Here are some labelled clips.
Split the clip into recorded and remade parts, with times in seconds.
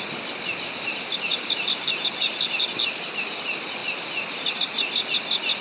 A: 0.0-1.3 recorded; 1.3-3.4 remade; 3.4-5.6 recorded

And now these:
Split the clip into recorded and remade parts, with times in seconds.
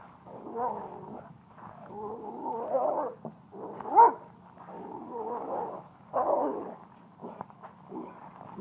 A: 0.0-2.4 remade; 2.4-4.6 recorded; 4.6-7.2 remade; 7.2-7.9 recorded; 7.9-8.6 remade